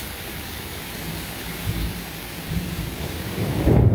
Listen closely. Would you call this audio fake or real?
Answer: fake